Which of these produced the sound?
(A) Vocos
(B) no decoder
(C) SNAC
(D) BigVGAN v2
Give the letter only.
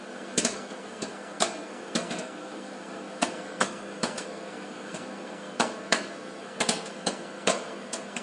C